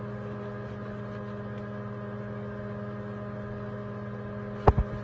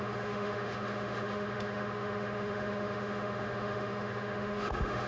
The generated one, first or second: second